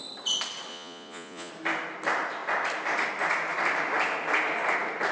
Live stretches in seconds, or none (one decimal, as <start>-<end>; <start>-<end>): 0.0-0.7; 1.5-5.1